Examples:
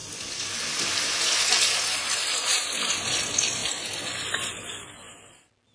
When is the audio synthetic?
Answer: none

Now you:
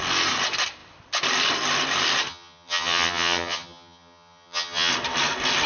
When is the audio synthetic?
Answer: 2.3-4.9 (vocoder, HiFi-GAN)